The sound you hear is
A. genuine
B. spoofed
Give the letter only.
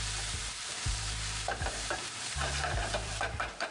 B